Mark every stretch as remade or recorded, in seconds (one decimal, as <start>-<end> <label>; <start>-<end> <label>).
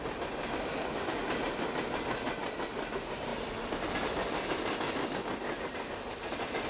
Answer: 0.0-6.7 recorded